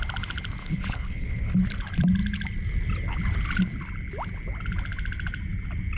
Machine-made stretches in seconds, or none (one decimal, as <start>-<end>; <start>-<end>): 0.6-1.5